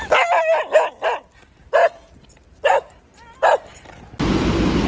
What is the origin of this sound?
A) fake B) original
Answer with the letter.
B